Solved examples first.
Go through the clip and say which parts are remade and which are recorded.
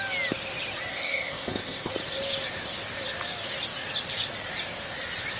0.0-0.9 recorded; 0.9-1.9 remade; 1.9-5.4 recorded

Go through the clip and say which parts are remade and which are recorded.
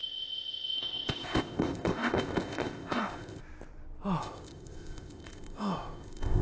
0.0-3.4 remade; 3.4-4.2 recorded; 4.2-6.4 remade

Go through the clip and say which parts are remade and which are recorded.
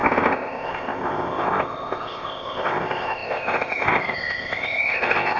0.0-5.4 remade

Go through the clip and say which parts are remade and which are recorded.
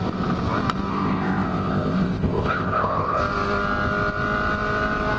0.0-0.9 recorded; 0.9-3.2 remade; 3.2-5.2 recorded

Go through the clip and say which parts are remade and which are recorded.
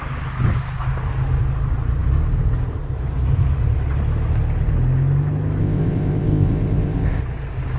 0.0-5.6 recorded; 5.6-7.2 remade; 7.2-7.8 recorded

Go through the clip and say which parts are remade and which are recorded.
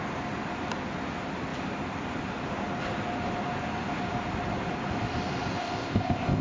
0.0-5.6 recorded; 5.6-6.4 remade